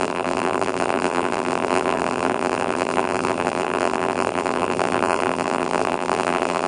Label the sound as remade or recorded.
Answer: remade